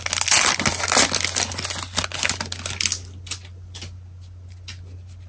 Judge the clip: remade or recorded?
recorded